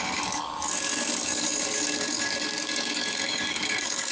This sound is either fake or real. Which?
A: fake